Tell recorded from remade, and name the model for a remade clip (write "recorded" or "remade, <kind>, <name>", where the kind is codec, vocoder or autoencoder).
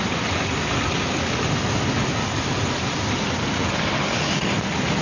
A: recorded